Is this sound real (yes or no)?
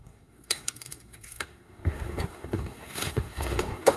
no